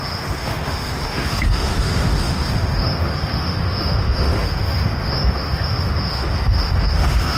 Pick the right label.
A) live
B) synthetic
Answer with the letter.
B